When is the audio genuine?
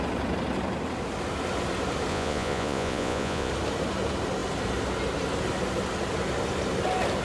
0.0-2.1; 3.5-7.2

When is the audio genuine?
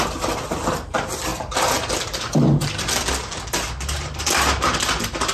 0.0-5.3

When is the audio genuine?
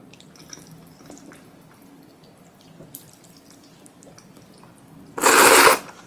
0.0-6.1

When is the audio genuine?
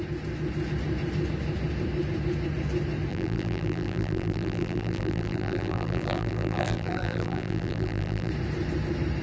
0.0-3.1; 8.3-9.2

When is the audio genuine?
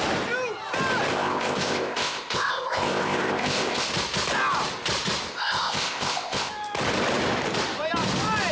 0.0-1.1; 3.9-5.3; 6.5-8.5